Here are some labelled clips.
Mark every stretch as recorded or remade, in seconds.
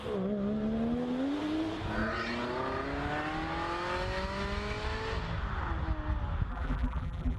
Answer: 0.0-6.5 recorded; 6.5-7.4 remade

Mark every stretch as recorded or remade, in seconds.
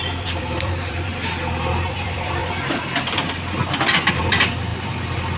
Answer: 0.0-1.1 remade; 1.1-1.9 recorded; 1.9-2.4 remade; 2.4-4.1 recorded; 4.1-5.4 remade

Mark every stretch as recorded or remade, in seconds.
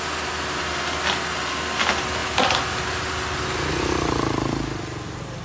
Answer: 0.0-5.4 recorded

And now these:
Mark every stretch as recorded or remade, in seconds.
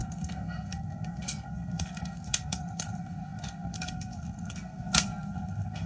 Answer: 0.0-5.9 remade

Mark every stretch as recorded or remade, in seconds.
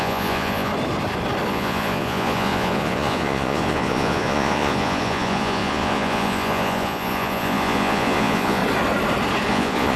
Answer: 0.0-0.7 remade; 0.7-1.5 recorded; 1.5-8.6 remade; 8.6-9.5 recorded; 9.5-10.0 remade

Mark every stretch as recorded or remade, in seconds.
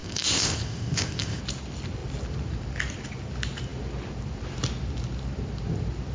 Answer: 0.0-1.4 remade; 1.4-6.1 recorded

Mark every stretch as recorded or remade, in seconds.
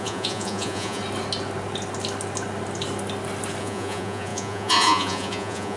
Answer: 0.0-1.0 remade; 1.0-3.6 recorded; 3.6-5.8 remade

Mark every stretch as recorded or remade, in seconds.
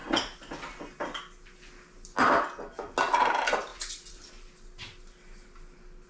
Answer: 0.0-3.7 recorded; 3.7-4.3 remade; 4.3-6.1 recorded